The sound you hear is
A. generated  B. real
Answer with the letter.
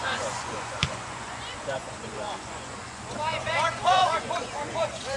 A